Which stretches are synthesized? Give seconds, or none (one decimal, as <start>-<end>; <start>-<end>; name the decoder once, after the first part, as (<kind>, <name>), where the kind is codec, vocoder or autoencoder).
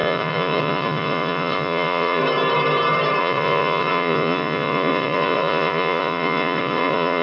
0.0-2.2 (vocoder, Vocos); 3.2-7.2